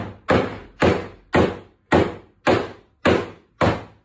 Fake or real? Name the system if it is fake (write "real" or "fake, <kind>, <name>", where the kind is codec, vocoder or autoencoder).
real